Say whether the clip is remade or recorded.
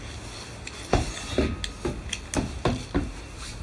recorded